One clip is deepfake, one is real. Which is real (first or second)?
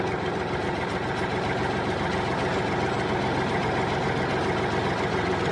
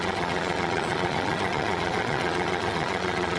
first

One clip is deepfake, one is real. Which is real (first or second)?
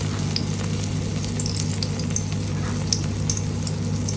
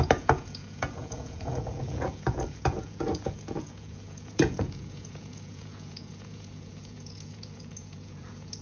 first